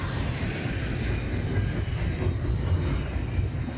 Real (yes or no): yes